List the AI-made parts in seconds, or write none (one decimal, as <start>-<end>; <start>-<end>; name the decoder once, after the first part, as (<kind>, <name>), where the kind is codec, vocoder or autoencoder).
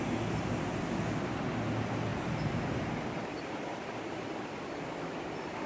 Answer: 2.1-3.6 (vocoder, BigVGAN v2)